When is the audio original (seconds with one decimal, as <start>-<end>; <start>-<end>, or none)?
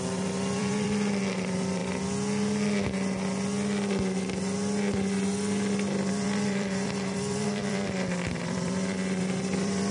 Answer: 1.8-6.1